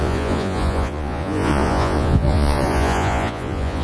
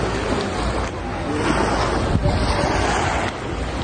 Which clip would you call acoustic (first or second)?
second